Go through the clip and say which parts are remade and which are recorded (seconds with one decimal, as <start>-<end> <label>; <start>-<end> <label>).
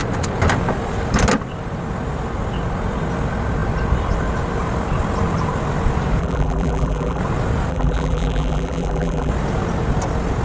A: 0.0-6.2 recorded; 6.2-7.2 remade; 7.2-7.7 recorded; 7.7-9.3 remade; 9.3-10.4 recorded